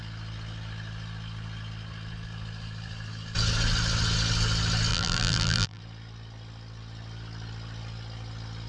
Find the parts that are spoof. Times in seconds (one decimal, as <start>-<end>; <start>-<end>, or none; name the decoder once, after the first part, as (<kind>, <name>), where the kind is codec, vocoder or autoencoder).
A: 4.9-5.8 (vocoder, BigVGAN v2)